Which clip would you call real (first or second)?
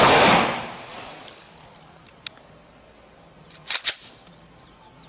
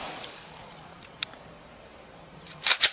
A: first